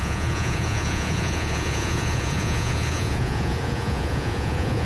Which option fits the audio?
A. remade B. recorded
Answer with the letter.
A